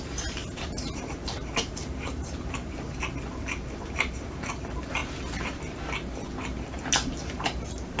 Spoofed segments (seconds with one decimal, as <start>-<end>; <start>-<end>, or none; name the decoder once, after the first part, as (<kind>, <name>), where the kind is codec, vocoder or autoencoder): 0.0-5.0 (vocoder, BigVGAN v2); 7.3-8.0